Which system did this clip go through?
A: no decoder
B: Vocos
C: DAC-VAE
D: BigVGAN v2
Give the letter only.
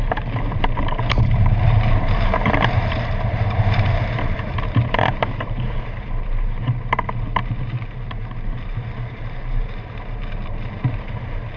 D